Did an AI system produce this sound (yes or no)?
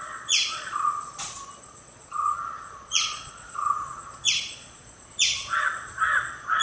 yes